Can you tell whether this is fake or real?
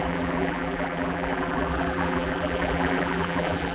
fake